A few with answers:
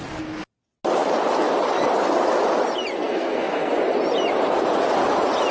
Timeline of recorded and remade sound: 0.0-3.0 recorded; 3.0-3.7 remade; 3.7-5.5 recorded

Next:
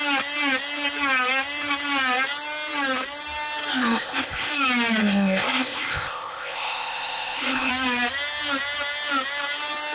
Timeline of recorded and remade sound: 0.0-3.7 recorded; 3.7-4.5 remade; 4.5-5.0 recorded; 5.0-7.7 remade; 7.7-9.9 recorded

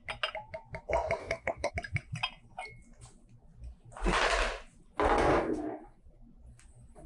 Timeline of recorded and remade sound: 0.0-1.2 recorded; 1.2-1.7 remade; 1.7-5.3 recorded; 5.3-5.8 remade; 5.8-7.1 recorded

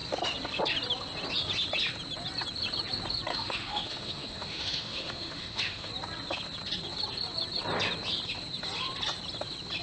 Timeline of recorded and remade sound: 0.0-3.3 recorded; 3.3-5.9 remade; 5.9-9.8 recorded

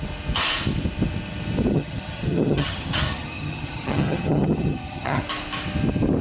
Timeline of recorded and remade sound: 0.0-1.7 recorded; 1.7-5.2 remade; 5.2-6.2 recorded